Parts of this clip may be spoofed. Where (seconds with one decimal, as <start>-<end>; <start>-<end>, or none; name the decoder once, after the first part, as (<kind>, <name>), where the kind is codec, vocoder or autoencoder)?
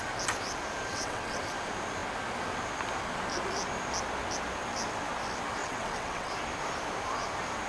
0.9-1.4 (vocoder, WaveNeXt); 5.6-6.3